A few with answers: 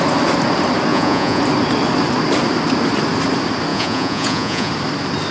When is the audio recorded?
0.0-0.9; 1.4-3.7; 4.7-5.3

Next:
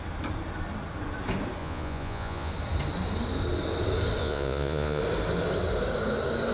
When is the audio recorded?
0.0-1.6; 2.5-4.2; 5.0-6.5

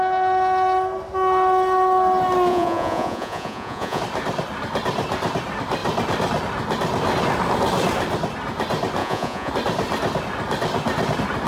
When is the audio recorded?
0.0-2.5; 4.0-9.0; 9.5-11.5

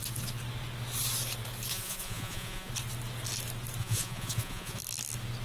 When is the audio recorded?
0.0-1.7; 2.7-3.8; 4.8-5.4